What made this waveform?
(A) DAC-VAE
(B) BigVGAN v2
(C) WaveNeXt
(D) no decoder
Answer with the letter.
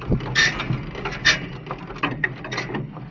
D